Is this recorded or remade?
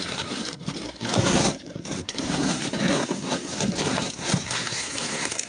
remade